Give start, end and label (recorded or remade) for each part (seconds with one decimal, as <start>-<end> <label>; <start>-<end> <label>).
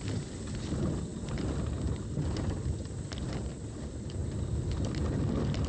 0.0-5.7 recorded